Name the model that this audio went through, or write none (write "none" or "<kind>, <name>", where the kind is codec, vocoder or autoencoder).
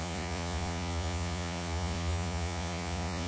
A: vocoder, Vocos